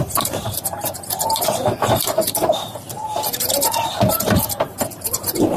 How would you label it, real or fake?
fake